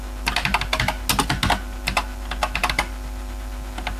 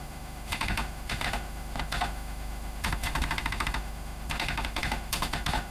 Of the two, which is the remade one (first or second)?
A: second